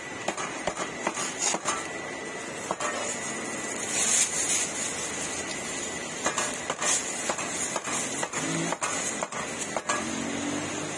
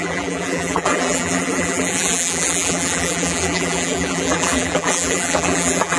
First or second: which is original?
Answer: first